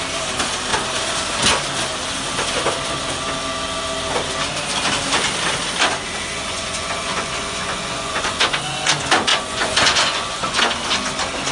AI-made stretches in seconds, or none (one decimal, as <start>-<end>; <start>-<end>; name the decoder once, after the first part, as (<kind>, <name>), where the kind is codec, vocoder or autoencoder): 6.3-8.9 (vocoder, Vocos); 9.3-10.6